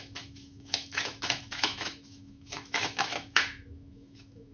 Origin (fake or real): fake